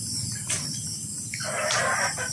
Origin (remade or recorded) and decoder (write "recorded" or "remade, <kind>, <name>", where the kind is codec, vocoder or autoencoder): recorded